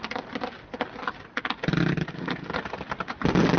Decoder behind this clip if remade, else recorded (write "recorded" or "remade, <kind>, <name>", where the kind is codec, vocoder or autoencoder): recorded